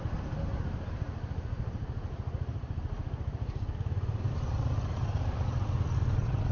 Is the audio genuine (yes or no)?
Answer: yes